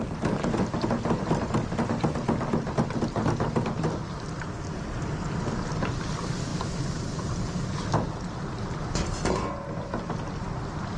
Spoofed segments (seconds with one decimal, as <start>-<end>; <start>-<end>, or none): none